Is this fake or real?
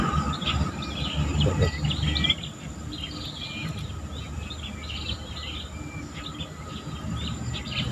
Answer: real